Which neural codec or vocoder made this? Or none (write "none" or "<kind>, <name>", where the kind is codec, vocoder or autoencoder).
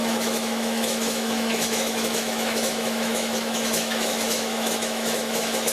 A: autoencoder, DAC-VAE